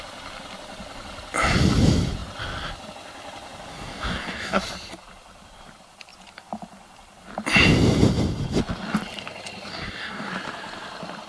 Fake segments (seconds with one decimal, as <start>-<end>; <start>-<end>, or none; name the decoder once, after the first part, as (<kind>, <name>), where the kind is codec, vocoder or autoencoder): 3.7-4.6 (codec, DAC); 9.7-10.3